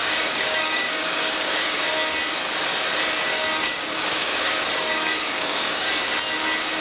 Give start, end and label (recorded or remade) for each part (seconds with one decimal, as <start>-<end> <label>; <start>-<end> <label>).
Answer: 0.0-1.9 remade; 1.9-3.3 recorded; 3.3-5.9 remade; 5.9-6.8 recorded